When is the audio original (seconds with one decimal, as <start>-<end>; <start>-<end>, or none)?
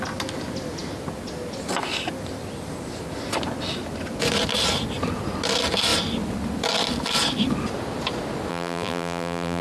0.0-8.5